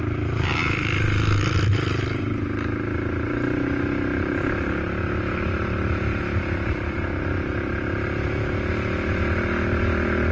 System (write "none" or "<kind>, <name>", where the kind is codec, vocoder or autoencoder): none